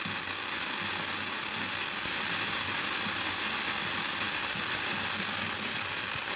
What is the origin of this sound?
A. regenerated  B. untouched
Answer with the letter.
B